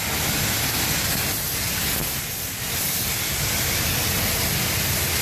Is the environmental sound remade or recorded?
recorded